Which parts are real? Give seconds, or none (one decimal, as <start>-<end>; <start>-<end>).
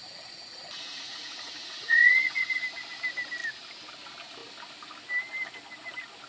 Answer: 2.6-6.3